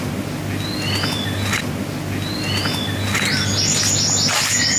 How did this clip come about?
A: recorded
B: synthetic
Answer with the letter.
A